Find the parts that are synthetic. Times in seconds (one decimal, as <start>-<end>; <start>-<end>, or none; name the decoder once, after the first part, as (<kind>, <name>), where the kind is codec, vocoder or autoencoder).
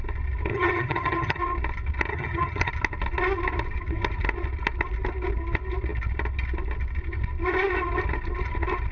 0.5-1.4 (vocoder, HiFi-GAN); 2.1-2.7